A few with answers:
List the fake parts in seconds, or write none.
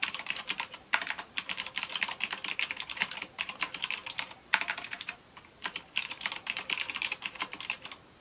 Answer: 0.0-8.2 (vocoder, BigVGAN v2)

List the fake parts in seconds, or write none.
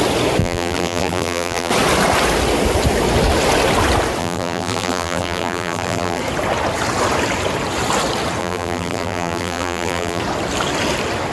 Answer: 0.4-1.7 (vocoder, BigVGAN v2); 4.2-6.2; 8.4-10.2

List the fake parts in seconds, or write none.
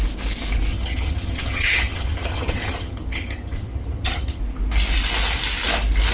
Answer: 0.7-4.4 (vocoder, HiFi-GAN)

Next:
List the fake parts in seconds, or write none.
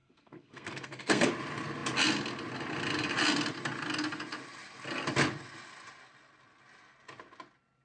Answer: 0.0-1.3 (codec, SNAC)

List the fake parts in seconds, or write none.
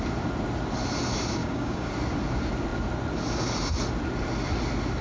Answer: 1.4-1.9 (codec, DAC)